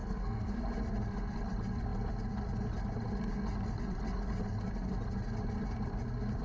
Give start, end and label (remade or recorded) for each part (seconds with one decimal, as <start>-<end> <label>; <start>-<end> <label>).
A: 0.0-0.5 remade; 0.5-6.4 recorded